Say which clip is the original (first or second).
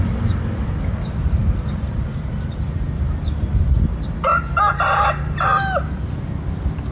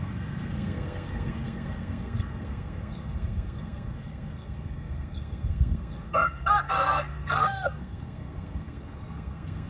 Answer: first